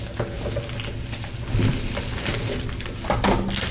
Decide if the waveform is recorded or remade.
recorded